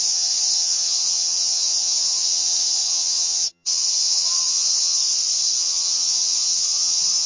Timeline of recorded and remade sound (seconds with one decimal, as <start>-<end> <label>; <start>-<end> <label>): 0.0-5.0 remade; 5.0-5.6 recorded; 5.6-7.3 remade